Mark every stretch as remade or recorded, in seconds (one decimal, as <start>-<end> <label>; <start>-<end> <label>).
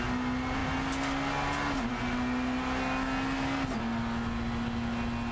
0.0-5.3 recorded